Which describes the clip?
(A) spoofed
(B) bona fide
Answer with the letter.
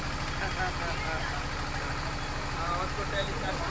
B